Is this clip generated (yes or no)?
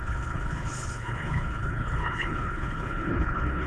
yes